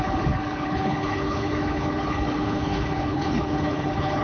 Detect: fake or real fake